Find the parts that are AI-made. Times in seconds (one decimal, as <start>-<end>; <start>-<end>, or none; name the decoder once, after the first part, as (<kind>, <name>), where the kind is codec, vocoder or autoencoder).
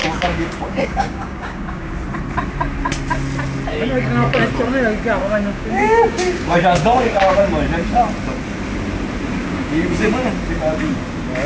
0.0-1.9 (codec, DAC); 5.2-7.4; 9.4-10.1